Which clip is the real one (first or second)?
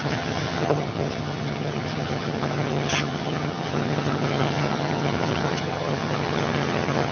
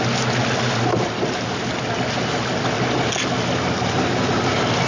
second